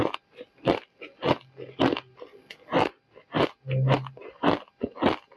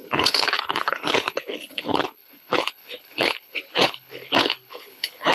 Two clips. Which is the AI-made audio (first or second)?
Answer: second